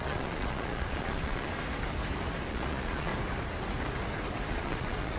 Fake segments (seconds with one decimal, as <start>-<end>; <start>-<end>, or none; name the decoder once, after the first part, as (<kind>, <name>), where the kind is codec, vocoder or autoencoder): 0.0-1.5 (vocoder, Vocos); 2.5-3.1; 4.5-5.2